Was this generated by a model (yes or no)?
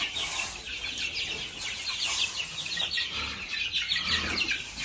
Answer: no